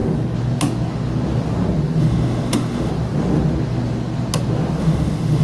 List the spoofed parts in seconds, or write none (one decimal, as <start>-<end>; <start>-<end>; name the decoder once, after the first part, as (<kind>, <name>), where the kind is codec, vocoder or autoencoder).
2.0-2.9 (autoencoder, DAC-VAE); 4.8-5.4